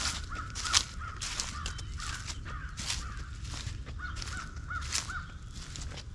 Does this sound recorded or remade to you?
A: recorded